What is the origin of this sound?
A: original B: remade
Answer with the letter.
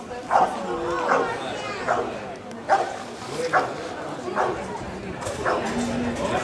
A